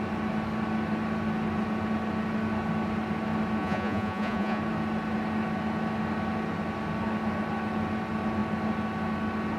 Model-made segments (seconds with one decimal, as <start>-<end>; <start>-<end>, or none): 3.6-4.6